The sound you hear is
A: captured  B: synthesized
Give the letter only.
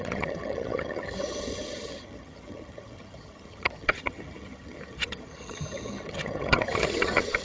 B